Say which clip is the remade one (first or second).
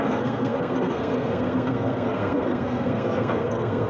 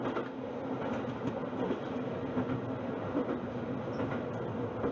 first